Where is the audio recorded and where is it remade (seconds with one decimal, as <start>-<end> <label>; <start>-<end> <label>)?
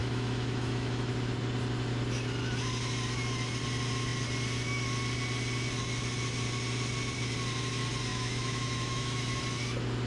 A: 0.0-1.1 remade; 1.1-8.1 recorded; 8.1-9.4 remade; 9.4-10.1 recorded